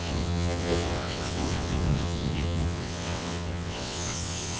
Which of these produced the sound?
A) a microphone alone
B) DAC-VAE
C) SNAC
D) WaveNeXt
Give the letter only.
D